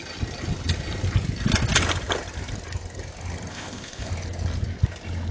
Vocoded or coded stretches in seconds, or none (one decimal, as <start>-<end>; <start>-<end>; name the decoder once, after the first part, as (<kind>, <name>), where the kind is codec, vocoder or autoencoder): 3.5-4.1 (codec, ZipCodec)